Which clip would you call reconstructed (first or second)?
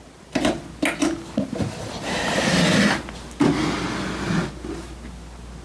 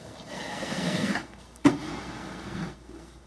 second